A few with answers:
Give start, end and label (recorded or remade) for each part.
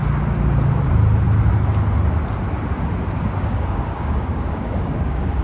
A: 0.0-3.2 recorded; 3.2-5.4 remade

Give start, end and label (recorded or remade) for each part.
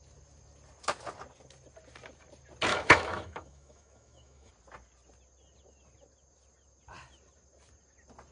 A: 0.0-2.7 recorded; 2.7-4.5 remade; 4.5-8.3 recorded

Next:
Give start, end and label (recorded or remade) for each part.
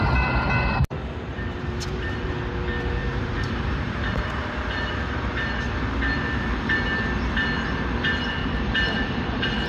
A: 0.0-1.3 recorded; 1.3-2.3 remade; 2.3-3.0 recorded; 3.0-5.6 remade; 5.6-8.4 recorded; 8.4-9.7 remade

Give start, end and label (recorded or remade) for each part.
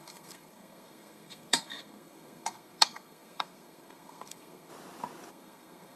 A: 0.0-4.7 remade; 4.7-5.3 recorded; 5.3-6.0 remade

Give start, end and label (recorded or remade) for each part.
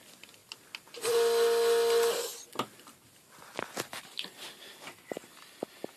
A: 0.0-6.0 recorded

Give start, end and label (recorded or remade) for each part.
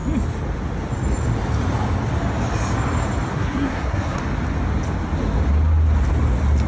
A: 0.0-3.3 recorded; 3.3-4.2 remade; 4.2-6.7 recorded